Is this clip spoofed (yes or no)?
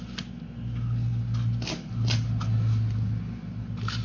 no